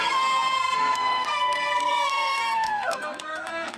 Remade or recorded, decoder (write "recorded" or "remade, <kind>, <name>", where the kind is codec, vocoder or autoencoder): remade, codec, SNAC